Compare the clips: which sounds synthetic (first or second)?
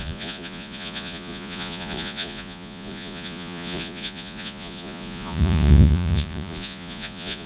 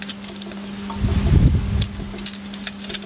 first